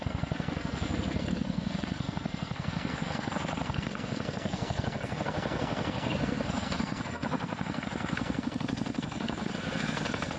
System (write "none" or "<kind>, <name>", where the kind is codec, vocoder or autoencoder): codec, SNAC